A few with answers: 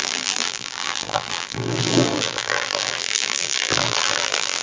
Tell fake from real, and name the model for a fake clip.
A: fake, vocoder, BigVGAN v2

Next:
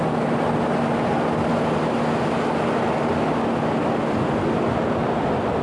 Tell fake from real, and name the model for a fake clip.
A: real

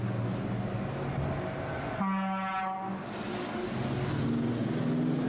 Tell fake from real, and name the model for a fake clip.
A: real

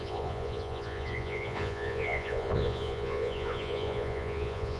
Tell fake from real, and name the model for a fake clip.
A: fake, vocoder, Vocos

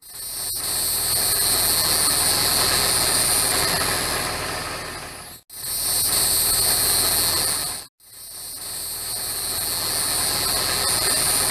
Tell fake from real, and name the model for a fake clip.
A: real